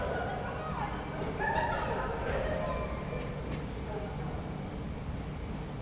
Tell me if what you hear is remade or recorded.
recorded